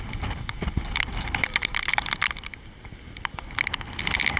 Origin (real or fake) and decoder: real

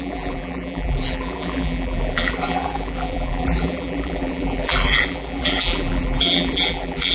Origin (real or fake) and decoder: fake, vocoder, BigVGAN v2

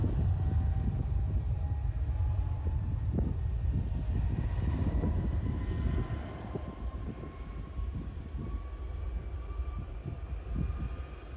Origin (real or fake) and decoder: real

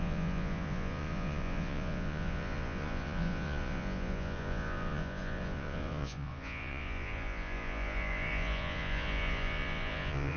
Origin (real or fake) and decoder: fake, vocoder, Vocos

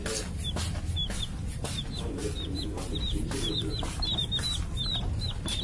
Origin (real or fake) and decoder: real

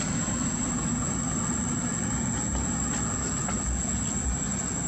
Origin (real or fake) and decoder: real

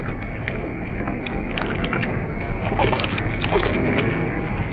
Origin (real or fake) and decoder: fake, codec, SNAC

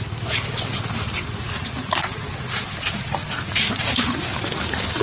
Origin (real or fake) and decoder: real